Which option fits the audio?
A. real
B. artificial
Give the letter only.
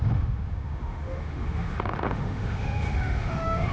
B